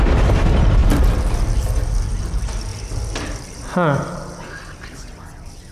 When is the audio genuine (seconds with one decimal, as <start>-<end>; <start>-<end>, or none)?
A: 0.0-0.8; 2.2-2.7; 4.3-5.7